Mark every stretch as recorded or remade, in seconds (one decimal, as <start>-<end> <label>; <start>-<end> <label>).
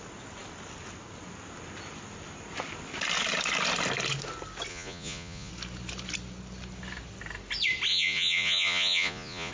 0.0-4.7 recorded; 4.7-5.5 remade; 5.5-7.9 recorded; 7.9-9.5 remade